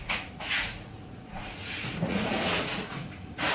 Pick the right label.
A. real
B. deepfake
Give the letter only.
B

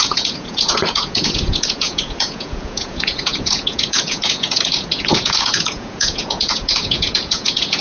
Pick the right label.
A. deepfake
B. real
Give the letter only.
A